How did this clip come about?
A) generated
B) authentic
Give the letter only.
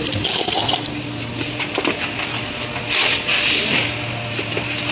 B